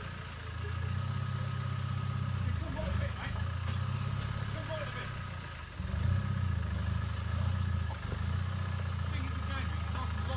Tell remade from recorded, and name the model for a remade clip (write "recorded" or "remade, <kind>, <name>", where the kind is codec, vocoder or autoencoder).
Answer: recorded